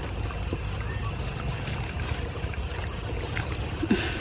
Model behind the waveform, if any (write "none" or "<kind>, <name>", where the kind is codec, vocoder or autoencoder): none